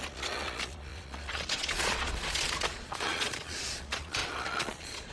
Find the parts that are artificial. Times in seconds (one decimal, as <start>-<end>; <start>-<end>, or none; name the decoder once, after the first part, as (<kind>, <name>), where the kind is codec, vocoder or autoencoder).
0.0-5.1 (vocoder, Vocos)